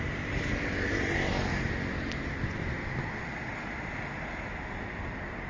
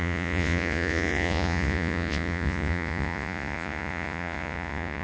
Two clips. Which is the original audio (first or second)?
first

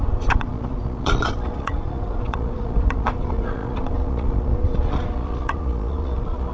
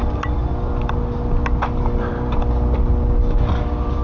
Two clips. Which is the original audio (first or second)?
second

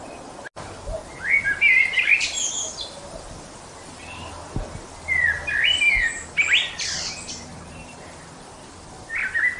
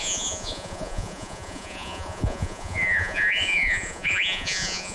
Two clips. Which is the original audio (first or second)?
first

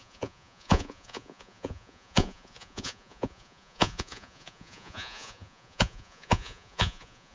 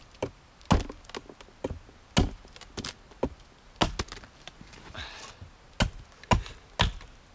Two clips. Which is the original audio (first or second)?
second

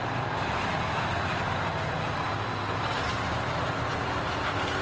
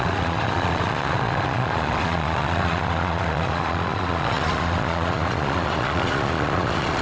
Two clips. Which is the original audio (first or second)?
first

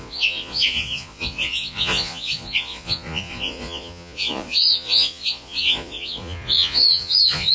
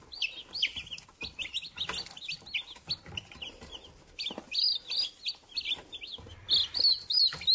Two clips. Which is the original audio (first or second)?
second